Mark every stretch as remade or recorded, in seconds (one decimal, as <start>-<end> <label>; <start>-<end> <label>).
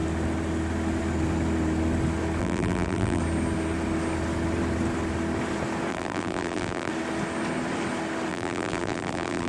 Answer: 0.0-2.4 recorded; 2.4-3.2 remade; 3.2-5.9 recorded; 5.9-6.9 remade; 6.9-8.3 recorded; 8.3-9.5 remade